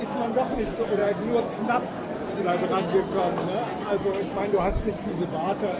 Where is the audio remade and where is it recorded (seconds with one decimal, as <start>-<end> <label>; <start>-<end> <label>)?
0.0-5.8 recorded